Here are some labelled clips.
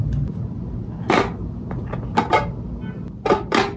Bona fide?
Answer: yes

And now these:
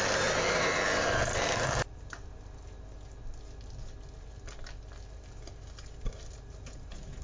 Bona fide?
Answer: yes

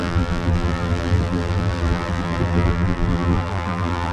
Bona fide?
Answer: no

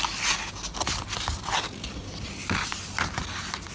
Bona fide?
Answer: yes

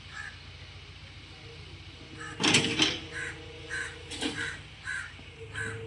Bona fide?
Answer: yes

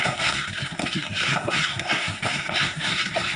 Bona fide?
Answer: no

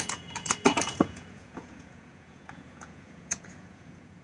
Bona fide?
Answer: no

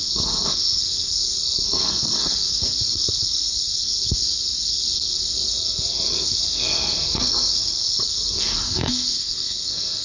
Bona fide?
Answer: no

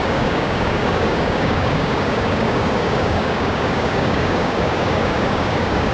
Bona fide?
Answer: no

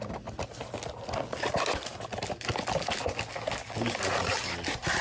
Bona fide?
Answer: yes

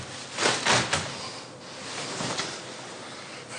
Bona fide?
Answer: yes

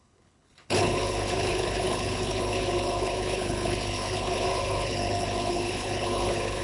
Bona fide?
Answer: no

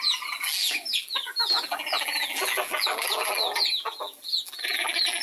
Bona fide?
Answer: no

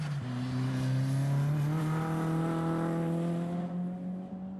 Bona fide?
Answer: yes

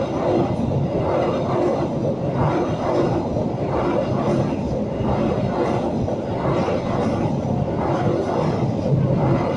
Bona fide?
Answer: yes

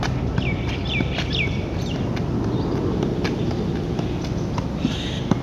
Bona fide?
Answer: yes